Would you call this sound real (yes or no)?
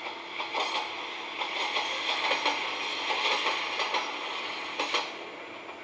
yes